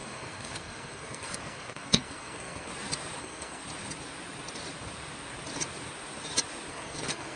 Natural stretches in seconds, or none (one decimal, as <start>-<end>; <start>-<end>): 2.7-3.2; 3.6-6.7